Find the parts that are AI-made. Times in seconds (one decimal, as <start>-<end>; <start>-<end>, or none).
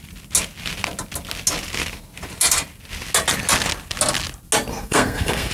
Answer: 4.7-5.5